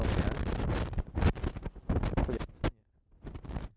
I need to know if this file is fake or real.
real